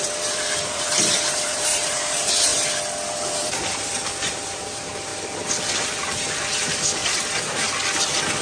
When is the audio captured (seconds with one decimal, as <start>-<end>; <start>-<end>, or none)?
2.5-3.1; 5.1-5.6; 7.0-8.4